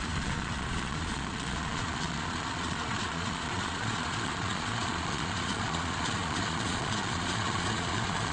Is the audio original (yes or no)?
no